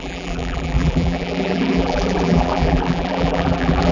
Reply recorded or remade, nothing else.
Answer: remade